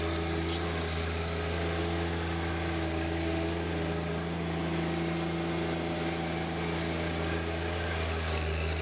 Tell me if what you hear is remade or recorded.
recorded